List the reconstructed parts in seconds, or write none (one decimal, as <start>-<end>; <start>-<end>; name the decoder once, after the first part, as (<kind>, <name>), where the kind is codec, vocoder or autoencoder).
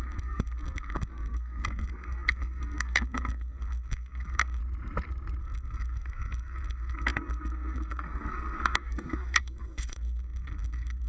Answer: 0.0-4.6 (codec, SNAC); 5.4-11.1